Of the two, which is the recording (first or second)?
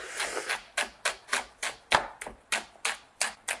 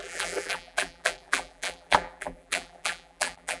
first